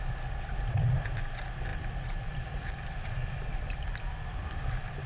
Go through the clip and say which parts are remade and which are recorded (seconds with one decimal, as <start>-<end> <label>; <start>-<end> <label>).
0.0-1.7 recorded; 1.7-5.1 remade